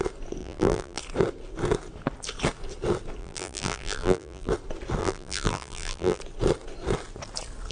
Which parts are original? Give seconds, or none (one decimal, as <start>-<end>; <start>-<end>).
0.0-0.4; 1.0-3.2; 4.5-5.0; 6.2-7.7